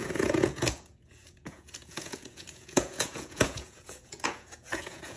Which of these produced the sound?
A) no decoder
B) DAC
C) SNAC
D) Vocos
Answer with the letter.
D